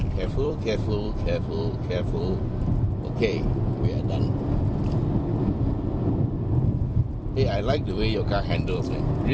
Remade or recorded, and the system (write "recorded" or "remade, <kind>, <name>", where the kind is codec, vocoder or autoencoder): remade, vocoder, BigVGAN v2